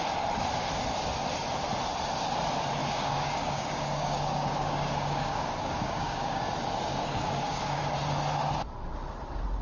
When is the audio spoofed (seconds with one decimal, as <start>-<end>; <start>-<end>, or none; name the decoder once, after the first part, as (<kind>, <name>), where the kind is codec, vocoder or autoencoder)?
2.8-6.4 (codec, DAC); 6.9-7.8